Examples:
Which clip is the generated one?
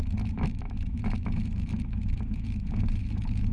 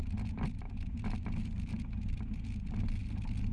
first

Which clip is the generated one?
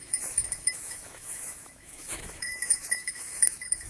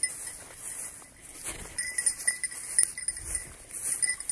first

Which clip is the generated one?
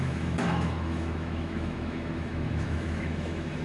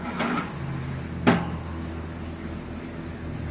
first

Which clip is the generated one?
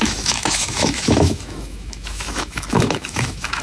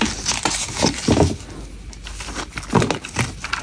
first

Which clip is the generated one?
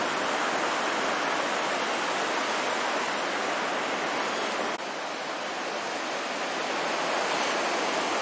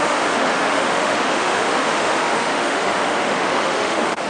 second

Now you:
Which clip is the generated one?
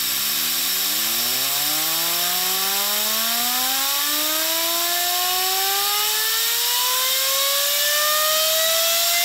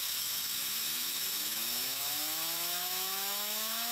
second